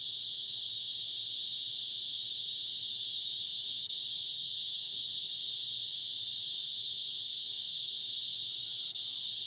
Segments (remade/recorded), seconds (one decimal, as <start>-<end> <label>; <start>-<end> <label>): 0.0-3.5 recorded; 3.5-5.3 remade; 5.3-6.6 recorded; 6.6-8.0 remade; 8.0-9.5 recorded